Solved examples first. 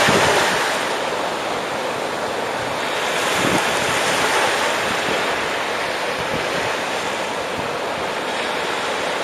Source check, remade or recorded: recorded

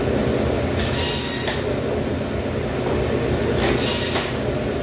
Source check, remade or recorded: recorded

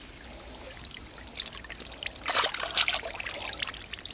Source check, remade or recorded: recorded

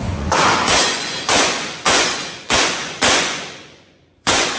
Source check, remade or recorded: remade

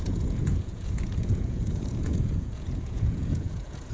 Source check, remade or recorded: remade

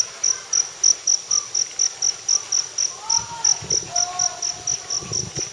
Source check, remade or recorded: recorded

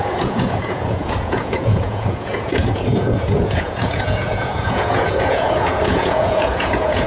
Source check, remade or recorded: remade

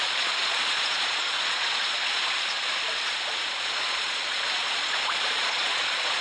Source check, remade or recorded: remade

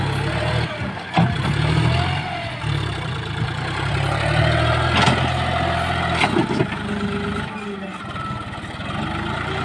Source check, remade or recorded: recorded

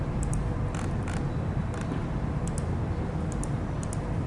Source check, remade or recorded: recorded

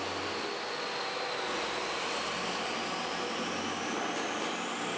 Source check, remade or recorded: recorded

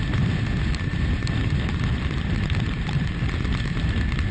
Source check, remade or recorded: recorded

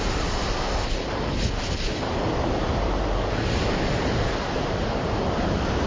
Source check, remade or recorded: recorded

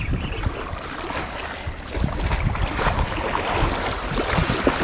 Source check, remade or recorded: recorded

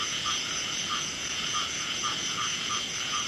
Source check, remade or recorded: remade